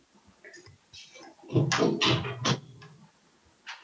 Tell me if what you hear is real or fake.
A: real